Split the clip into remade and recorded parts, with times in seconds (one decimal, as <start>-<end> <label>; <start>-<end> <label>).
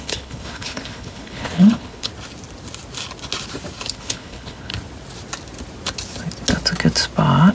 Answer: 0.0-2.1 remade; 2.1-3.9 recorded; 3.9-4.7 remade; 4.7-7.5 recorded